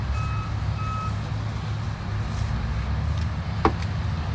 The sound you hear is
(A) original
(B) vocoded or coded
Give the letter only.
A